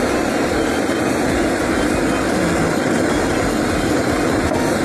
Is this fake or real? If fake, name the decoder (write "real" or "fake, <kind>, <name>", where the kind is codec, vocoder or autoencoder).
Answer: real